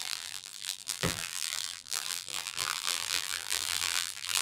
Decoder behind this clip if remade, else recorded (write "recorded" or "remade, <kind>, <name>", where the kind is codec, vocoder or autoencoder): remade, vocoder, BigVGAN v2